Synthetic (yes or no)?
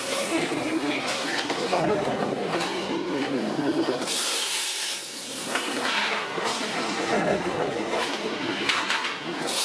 yes